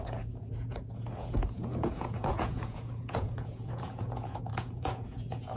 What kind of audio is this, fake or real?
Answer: fake